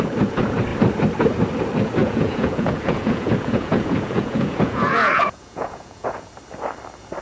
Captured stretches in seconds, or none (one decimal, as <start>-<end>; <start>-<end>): 0.0-2.0; 6.3-7.2